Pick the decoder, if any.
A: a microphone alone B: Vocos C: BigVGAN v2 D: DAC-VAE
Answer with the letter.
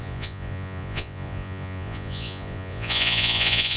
B